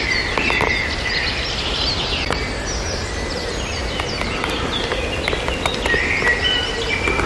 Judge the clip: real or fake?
real